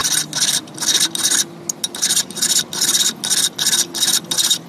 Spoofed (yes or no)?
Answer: no